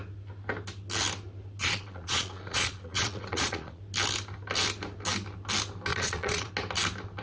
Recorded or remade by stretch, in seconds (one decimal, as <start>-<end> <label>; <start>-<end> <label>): 0.0-1.6 recorded; 1.6-3.8 remade; 3.8-5.9 recorded; 5.9-6.5 remade; 6.5-7.2 recorded